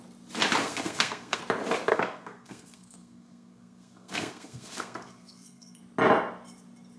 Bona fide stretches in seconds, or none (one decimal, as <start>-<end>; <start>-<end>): 0.0-0.6; 1.4-1.9; 5.8-7.0